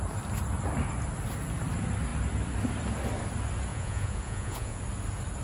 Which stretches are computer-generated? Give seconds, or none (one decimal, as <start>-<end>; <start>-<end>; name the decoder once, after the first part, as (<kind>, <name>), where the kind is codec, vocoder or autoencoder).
3.7-4.8 (vocoder, Vocos)